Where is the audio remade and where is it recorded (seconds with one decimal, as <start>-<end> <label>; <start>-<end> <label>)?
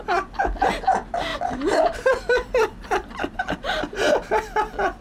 0.0-1.3 recorded; 1.3-4.3 remade; 4.3-5.0 recorded